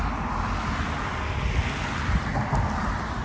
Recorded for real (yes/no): yes